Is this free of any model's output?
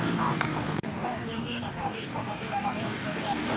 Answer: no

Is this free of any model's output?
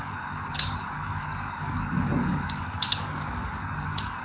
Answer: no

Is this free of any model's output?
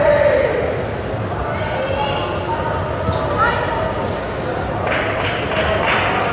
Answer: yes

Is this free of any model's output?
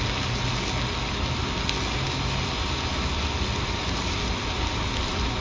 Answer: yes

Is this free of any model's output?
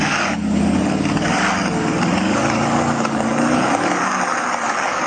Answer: no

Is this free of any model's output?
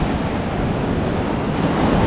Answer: yes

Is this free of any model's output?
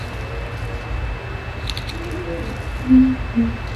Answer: yes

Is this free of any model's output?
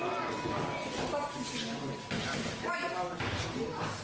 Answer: yes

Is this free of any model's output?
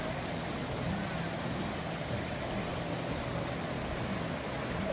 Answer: yes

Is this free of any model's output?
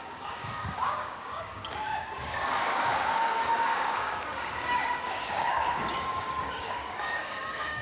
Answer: no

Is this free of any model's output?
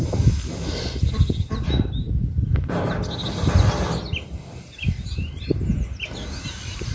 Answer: yes